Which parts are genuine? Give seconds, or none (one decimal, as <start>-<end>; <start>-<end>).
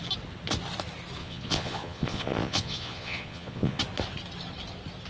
0.0-1.2; 3.8-5.1